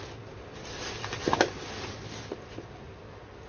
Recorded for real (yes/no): yes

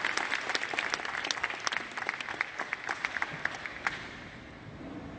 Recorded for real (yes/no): yes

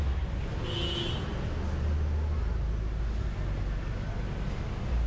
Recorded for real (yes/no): yes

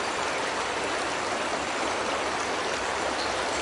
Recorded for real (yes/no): no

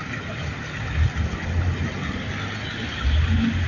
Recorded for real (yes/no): yes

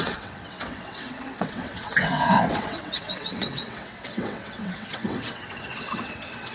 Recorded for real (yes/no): no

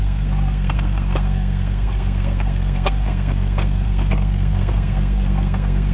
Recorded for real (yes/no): no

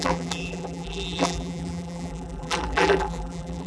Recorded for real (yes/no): no